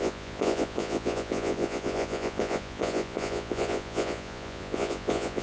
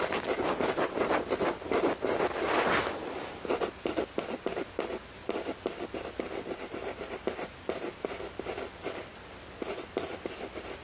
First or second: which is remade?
first